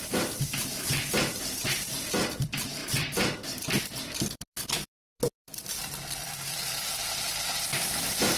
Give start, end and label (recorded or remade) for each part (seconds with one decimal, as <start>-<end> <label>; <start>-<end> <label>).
0.0-8.4 remade